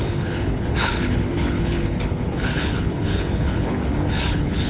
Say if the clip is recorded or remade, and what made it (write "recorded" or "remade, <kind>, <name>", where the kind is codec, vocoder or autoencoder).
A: remade, codec, HILCodec